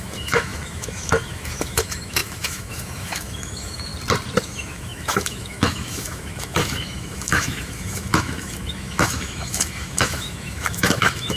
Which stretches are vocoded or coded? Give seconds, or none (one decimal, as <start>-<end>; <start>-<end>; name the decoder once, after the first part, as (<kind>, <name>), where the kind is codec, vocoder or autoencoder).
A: 0.0-3.9 (autoencoder, DAC-VAE); 4.4-11.4